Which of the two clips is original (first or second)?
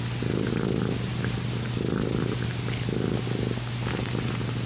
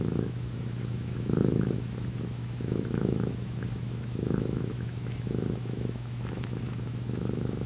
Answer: first